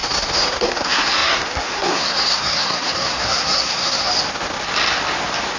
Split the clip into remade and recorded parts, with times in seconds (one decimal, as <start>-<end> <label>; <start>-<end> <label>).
0.0-0.6 recorded; 0.6-4.1 remade; 4.1-5.6 recorded